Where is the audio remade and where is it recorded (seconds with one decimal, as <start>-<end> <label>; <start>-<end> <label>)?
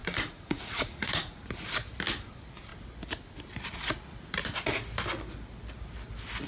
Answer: 0.0-1.4 remade; 1.4-6.5 recorded